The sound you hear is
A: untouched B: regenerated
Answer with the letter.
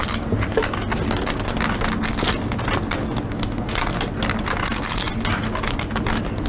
A